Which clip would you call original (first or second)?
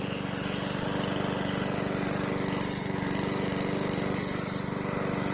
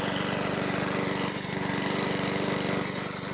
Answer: first